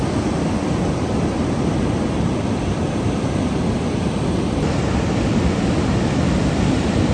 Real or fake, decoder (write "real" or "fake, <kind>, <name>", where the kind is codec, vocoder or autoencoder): real